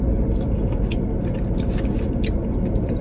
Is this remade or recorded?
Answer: recorded